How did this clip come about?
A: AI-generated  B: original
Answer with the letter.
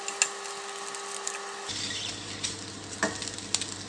B